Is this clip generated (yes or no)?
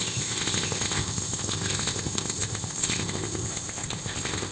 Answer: yes